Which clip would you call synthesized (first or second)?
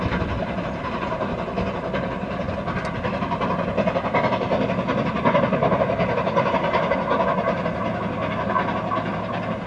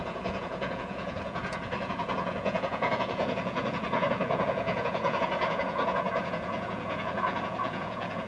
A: second